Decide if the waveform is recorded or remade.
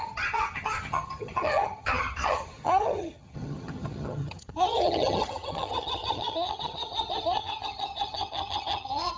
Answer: remade